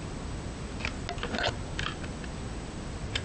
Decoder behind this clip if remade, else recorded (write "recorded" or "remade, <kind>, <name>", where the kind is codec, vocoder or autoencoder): recorded